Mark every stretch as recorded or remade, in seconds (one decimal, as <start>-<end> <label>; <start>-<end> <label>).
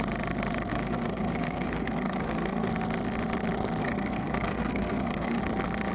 0.0-0.7 recorded; 0.7-2.7 remade; 2.7-3.8 recorded; 3.8-5.4 remade; 5.4-5.9 recorded